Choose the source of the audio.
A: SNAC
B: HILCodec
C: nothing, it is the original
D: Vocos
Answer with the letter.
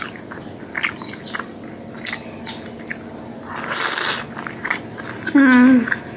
C